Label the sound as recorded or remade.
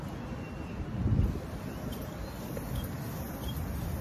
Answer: recorded